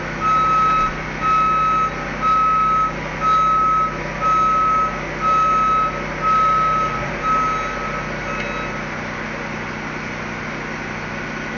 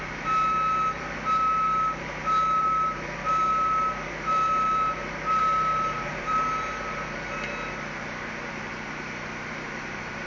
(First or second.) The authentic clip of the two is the first